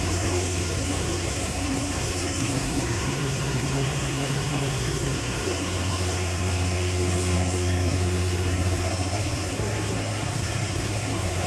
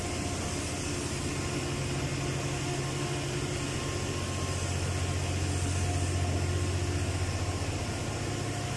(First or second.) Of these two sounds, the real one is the second